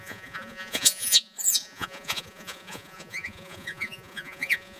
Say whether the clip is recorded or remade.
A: remade